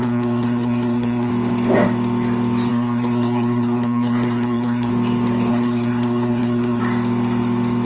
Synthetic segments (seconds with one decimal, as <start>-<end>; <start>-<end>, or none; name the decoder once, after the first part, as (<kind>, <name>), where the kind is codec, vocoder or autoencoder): 0.0-1.3 (codec, SNAC); 2.7-4.9; 5.5-6.8